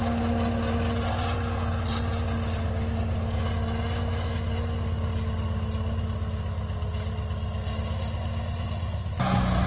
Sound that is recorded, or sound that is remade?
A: recorded